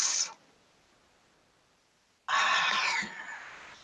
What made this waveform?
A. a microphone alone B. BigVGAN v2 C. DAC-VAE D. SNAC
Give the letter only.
A